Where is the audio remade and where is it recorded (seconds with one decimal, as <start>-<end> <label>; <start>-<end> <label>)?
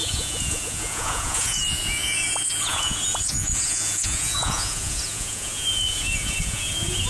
0.0-7.1 remade